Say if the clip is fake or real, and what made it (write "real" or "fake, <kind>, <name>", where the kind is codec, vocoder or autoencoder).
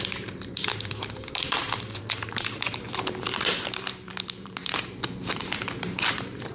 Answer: fake, vocoder, BigVGAN v2